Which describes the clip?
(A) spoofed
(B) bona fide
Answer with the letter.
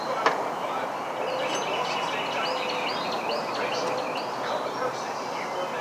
B